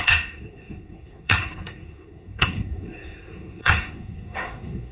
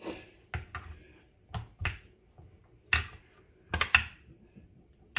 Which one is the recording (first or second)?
second